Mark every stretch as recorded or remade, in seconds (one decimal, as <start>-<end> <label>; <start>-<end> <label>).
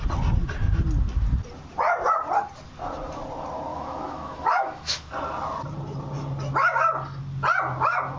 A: 0.0-3.7 recorded; 3.7-5.1 remade; 5.1-8.2 recorded